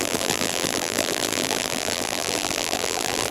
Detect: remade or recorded remade